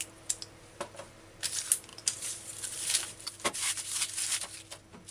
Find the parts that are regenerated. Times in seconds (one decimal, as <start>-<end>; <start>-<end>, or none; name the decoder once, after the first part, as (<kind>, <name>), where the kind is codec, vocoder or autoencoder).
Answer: 1.9-4.1 (vocoder, BigVGAN v2)